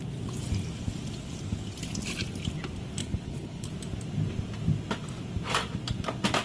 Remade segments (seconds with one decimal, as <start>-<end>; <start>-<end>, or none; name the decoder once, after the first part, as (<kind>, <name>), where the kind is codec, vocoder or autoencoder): 3.0-3.7 (codec, HILCodec)